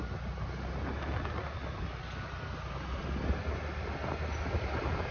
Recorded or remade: recorded